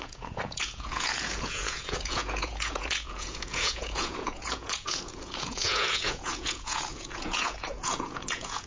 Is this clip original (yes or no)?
no